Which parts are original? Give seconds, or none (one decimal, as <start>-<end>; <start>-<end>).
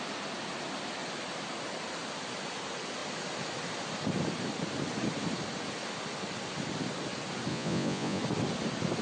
0.0-7.5; 8.2-9.0